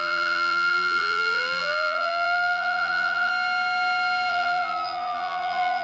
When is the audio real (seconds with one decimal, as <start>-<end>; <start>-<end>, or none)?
3.3-4.3